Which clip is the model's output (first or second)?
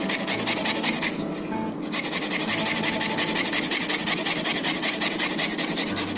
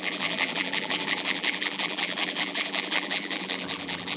second